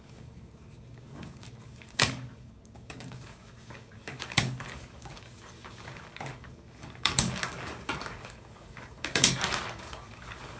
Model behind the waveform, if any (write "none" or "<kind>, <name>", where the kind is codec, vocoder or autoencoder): codec, DAC